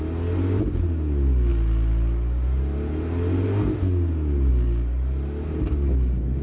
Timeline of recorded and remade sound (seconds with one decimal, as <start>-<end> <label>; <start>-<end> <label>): 0.0-6.4 recorded